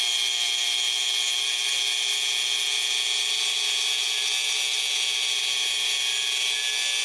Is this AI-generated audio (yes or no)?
no